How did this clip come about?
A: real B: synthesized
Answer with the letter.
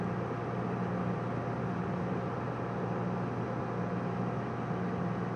A